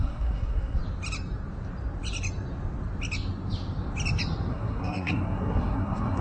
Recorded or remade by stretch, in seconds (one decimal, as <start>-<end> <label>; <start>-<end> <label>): 0.0-0.8 remade; 0.8-4.5 recorded; 4.5-6.2 remade